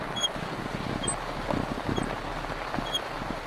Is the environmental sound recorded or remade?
recorded